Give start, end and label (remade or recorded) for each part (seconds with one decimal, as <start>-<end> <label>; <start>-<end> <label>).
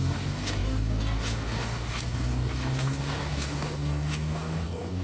0.0-5.0 remade